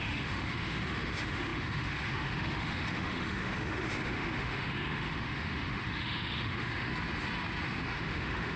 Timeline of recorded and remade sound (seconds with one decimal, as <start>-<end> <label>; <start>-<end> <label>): 0.0-6.9 remade; 6.9-7.8 recorded; 7.8-8.6 remade